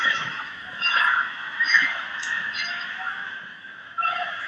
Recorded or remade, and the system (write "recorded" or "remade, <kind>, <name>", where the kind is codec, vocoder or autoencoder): remade, autoencoder, DAC-VAE